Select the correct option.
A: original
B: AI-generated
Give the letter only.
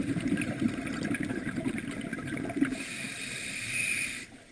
A